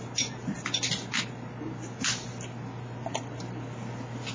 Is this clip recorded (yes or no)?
yes